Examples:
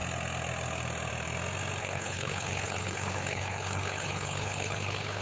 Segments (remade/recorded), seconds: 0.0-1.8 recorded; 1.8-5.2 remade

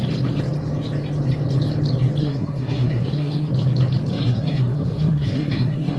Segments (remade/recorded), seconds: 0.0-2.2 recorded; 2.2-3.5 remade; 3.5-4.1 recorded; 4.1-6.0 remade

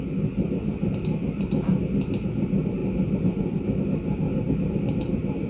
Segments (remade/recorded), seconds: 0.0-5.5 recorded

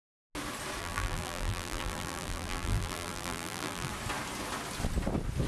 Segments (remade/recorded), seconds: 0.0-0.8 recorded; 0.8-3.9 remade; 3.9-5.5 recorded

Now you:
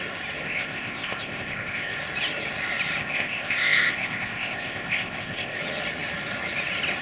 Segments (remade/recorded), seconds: 0.0-0.4 recorded; 0.4-2.0 remade; 2.0-3.0 recorded; 3.0-5.6 remade; 5.6-7.0 recorded